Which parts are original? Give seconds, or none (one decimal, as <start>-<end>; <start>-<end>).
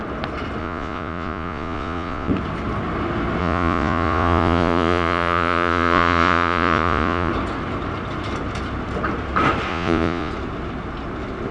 0.0-0.6; 2.3-3.4; 7.3-9.7; 10.3-11.5